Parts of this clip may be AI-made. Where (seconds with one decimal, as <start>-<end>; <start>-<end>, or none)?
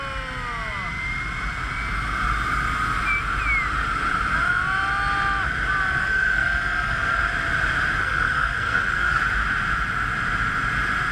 6.0-7.2; 8.0-9.2